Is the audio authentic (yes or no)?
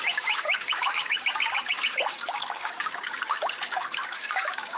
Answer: no